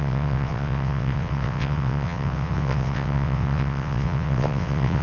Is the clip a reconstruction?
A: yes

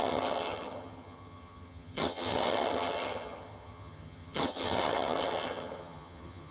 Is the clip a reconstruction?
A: yes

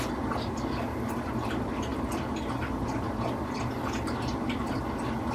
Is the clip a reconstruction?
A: no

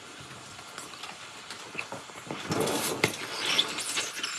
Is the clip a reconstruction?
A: no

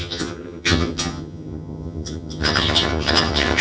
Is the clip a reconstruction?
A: yes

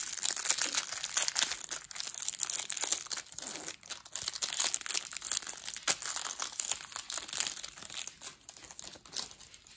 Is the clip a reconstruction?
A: no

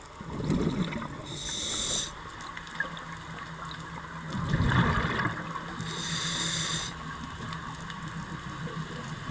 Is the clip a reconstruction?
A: no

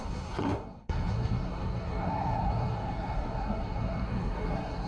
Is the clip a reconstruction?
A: yes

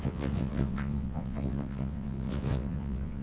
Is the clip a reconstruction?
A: yes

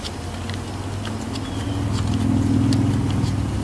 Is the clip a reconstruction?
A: no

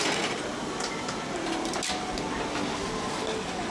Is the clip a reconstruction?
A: no